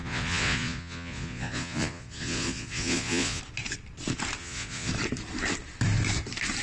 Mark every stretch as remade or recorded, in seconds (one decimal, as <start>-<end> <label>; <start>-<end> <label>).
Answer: 0.0-3.4 remade; 3.4-4.4 recorded; 4.4-4.9 remade; 4.9-6.6 recorded